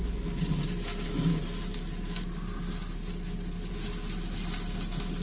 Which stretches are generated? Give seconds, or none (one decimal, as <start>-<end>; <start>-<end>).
none